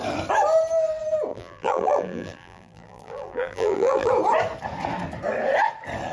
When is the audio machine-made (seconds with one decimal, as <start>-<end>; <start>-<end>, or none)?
1.3-4.1